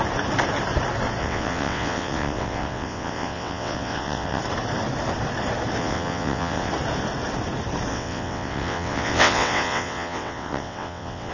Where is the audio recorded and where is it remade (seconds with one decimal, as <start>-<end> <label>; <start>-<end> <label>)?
0.0-1.2 recorded; 1.2-4.4 remade; 4.4-5.8 recorded; 5.8-6.7 remade; 6.7-7.9 recorded; 7.9-11.3 remade